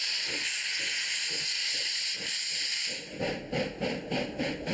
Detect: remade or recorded recorded